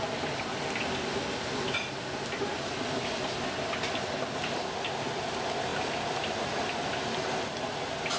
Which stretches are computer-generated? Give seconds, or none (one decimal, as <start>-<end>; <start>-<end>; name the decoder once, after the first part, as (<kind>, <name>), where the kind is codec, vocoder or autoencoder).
none